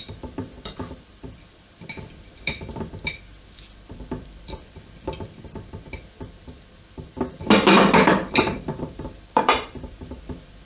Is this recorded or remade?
remade